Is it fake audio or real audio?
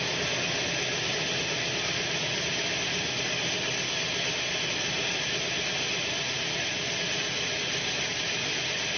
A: real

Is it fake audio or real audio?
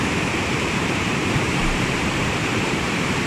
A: fake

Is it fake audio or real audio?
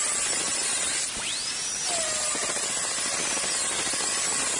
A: real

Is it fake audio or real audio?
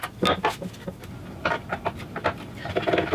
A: real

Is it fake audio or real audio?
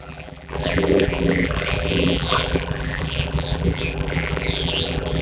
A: fake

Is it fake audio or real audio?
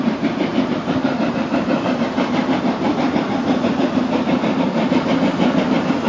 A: fake